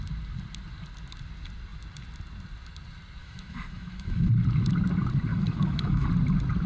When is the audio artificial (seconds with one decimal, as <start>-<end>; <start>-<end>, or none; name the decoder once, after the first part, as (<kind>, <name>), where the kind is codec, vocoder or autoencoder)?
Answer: 3.2-4.3 (autoencoder, DAC-VAE); 5.3-6.1